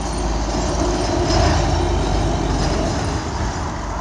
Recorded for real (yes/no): yes